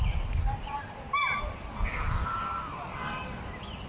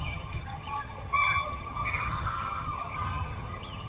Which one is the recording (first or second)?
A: first